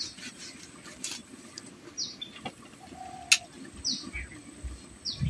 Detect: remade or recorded recorded